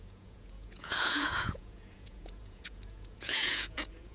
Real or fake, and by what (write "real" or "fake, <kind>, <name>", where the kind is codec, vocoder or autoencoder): fake, vocoder, Vocos